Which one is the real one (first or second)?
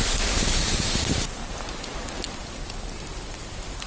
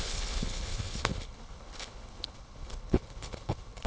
first